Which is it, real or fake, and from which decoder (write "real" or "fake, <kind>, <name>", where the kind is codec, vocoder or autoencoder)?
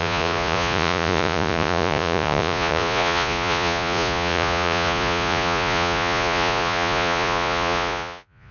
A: fake, vocoder, Vocos